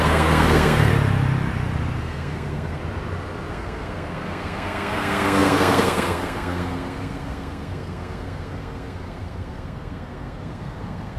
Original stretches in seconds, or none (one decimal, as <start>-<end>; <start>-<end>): 0.9-2.0; 2.8-3.5